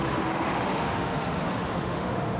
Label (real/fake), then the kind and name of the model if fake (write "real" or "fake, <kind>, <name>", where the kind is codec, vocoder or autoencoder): fake, autoencoder, DAC-VAE